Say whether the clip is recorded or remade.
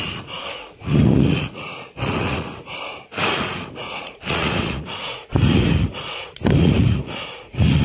remade